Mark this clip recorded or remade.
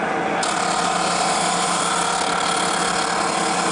recorded